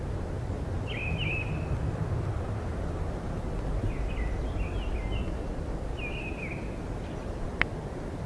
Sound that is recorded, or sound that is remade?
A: recorded